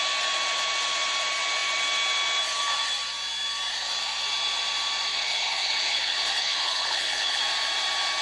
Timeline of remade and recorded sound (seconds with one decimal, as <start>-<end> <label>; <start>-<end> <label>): 0.0-5.1 recorded; 5.1-7.4 remade; 7.4-8.2 recorded